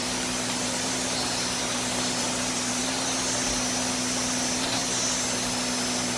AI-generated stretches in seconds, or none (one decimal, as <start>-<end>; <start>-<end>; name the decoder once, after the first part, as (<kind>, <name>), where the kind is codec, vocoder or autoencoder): none